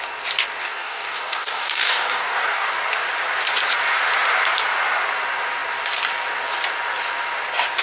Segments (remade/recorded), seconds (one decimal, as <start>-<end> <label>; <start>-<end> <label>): 0.0-0.6 recorded; 0.6-2.7 remade; 2.7-7.8 recorded